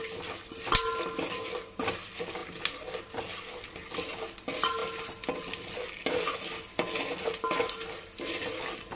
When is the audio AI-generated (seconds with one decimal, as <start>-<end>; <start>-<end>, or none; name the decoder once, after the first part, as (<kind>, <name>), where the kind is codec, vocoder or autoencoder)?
none